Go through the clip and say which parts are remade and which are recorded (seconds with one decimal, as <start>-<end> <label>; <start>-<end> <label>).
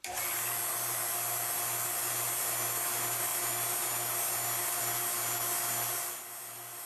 0.0-6.9 recorded